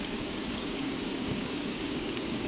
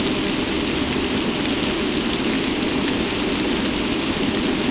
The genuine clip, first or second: second